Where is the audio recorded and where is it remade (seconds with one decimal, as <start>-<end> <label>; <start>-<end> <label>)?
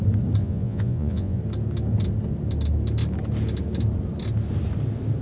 0.0-0.4 recorded; 0.4-1.4 remade; 1.4-5.2 recorded